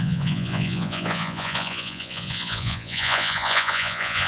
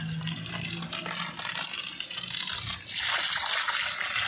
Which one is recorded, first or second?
second